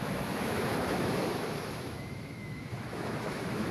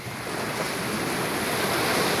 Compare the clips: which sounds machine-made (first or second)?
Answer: first